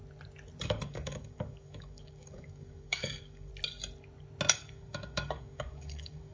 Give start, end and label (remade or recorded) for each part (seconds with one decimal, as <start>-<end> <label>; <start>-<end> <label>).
0.0-0.6 recorded; 0.6-3.5 remade; 3.5-4.5 recorded; 4.5-6.3 remade